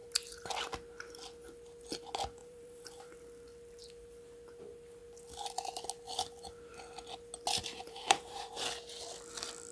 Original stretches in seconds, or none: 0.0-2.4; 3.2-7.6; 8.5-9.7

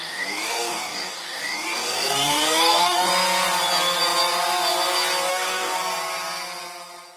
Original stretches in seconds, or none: 3.1-5.3; 5.8-7.2

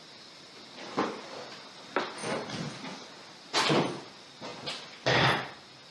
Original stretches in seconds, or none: 0.0-5.9

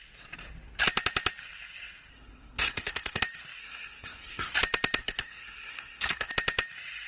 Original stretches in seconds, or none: 0.0-2.1; 3.2-3.6; 4.5-5.0; 6.3-7.1